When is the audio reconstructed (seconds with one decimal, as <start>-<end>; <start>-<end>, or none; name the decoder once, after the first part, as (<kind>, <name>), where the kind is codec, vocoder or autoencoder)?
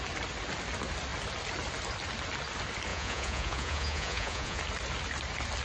2.9-4.6 (vocoder, Vocos)